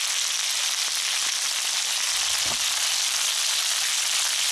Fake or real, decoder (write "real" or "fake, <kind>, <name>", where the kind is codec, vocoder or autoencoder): real